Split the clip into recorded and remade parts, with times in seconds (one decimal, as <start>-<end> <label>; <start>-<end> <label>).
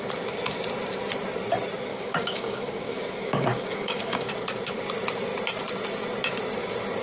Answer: 0.0-1.9 recorded; 1.9-4.3 remade; 4.3-7.0 recorded